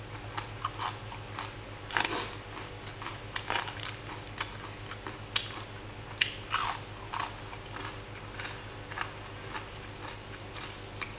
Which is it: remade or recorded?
recorded